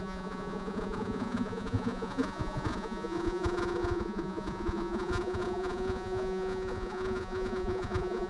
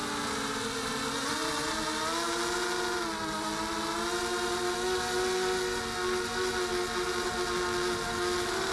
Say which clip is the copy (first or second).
first